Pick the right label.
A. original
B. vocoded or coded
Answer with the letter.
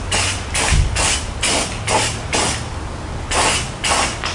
A